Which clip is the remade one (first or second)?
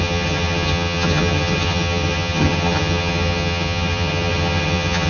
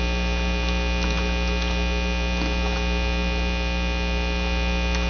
first